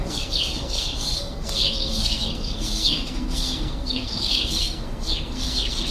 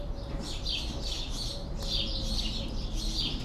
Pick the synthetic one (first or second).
first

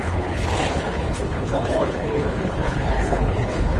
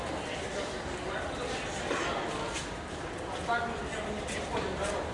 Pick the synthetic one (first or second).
first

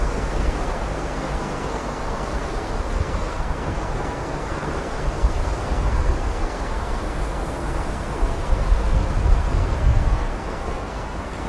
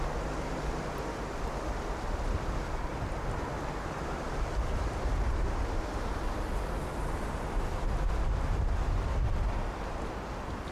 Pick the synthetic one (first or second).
first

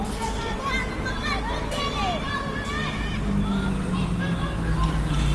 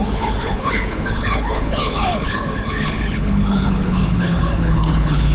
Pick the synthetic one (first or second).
second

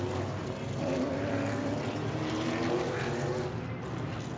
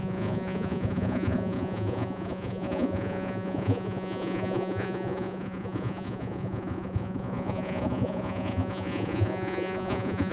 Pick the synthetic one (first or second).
second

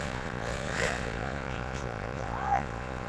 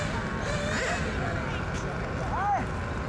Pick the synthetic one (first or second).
first